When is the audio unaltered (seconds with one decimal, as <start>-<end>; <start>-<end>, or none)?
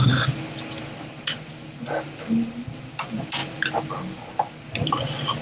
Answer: 0.0-5.4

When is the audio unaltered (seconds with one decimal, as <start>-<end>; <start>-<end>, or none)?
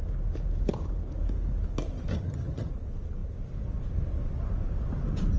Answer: 0.0-2.1; 2.7-5.4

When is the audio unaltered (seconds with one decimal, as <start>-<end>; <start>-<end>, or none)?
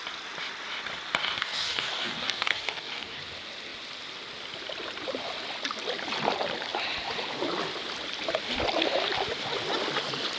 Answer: 0.0-1.4; 3.2-10.4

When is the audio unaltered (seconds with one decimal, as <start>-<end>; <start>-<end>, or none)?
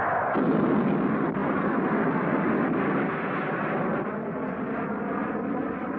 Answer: 0.0-6.0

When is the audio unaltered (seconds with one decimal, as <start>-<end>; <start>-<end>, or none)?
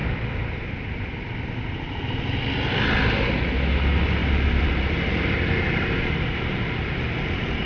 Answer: 0.0-4.2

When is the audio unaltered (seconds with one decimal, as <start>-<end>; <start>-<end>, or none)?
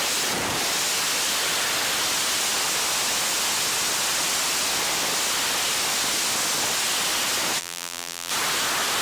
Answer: 0.0-7.6; 8.3-9.0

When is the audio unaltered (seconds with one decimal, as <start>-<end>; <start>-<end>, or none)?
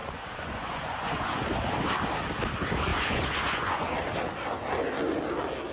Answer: 1.4-2.9; 4.1-5.7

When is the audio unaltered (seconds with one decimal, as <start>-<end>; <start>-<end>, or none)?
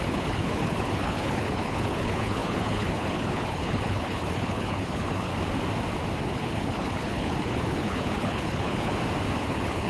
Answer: 5.3-6.2; 8.9-9.4